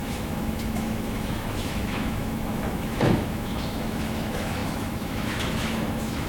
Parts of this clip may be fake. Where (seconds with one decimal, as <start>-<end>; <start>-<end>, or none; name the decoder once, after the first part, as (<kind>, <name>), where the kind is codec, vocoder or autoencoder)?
0.0-6.3 (autoencoder, DAC-VAE)